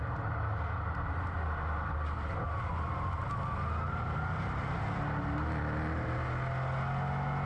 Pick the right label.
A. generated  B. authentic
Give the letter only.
B